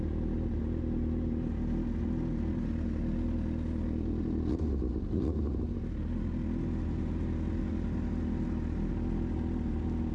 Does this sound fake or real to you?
real